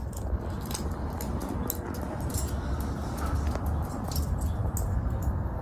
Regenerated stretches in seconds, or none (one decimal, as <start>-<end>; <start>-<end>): 4.9-5.6